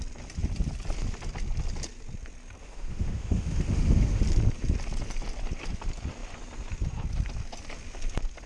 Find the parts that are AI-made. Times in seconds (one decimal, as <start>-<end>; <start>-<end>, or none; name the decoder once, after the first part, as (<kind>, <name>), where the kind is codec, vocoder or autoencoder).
2.6-4.2 (autoencoder, DAC-VAE)